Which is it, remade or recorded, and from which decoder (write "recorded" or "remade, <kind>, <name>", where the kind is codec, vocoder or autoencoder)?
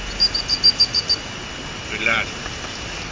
recorded